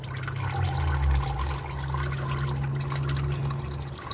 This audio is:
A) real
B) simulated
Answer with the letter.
A